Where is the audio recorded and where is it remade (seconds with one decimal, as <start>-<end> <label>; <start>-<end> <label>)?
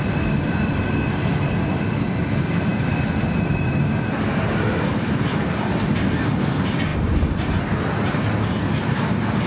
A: 0.0-9.5 recorded